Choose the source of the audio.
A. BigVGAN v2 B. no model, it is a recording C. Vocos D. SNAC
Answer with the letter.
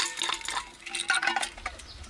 B